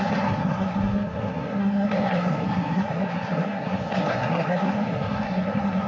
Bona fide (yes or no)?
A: no